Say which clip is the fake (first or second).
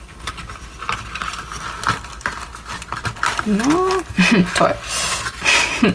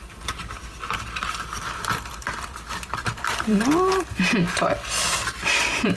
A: second